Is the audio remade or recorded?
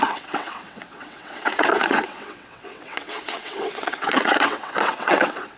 remade